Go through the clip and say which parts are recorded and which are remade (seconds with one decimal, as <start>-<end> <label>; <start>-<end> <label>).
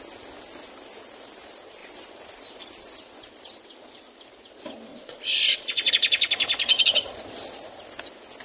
0.0-4.9 recorded; 4.9-5.9 remade; 5.9-8.4 recorded